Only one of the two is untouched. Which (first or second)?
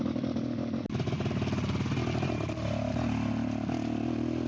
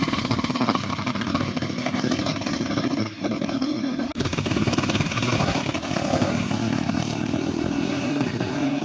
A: first